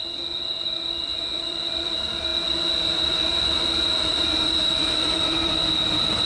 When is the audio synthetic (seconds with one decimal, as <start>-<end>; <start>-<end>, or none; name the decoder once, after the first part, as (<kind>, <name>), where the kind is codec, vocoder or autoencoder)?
0.5-2.3 (vocoder, BigVGAN v2); 2.8-6.3